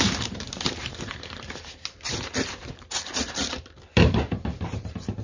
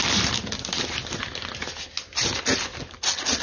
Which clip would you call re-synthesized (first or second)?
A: first